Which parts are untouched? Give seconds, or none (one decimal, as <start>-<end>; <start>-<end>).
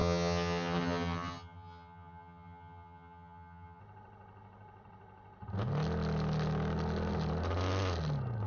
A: 3.8-8.5